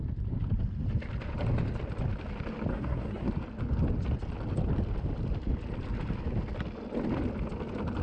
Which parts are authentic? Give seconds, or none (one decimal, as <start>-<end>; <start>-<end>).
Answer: 0.0-2.7; 3.3-8.0